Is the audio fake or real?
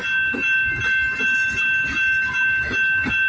real